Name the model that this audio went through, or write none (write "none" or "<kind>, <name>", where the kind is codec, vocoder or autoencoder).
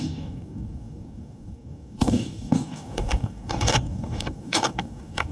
codec, DAC